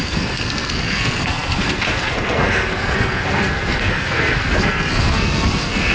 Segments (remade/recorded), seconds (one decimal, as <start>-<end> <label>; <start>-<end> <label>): 0.0-5.9 remade